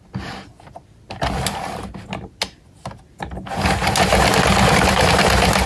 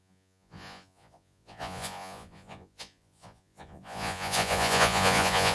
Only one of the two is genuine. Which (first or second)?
first